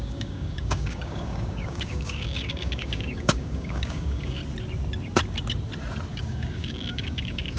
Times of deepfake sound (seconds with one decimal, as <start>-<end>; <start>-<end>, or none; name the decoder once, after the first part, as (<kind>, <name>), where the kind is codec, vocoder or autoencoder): 0.0-4.4 (codec, DAC); 6.1-7.6